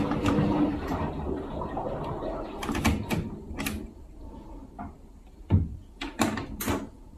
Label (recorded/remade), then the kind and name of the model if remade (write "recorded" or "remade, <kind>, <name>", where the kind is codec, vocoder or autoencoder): recorded